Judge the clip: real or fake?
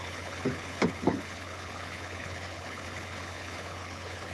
fake